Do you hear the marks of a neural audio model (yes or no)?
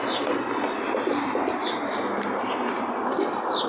no